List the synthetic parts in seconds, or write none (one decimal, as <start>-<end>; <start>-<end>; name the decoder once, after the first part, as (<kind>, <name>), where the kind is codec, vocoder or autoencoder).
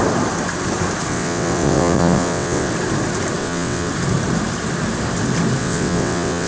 1.1-2.7 (vocoder, WaveNeXt); 3.4-3.9; 5.6-6.5